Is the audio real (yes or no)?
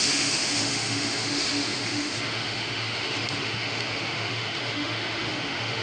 no